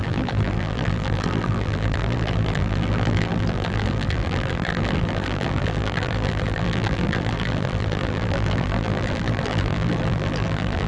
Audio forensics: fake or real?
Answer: fake